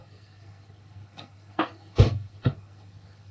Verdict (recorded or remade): remade